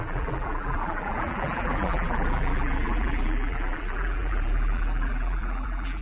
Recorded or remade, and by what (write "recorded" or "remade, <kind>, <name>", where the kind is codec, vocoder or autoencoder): remade, vocoder, BigVGAN v2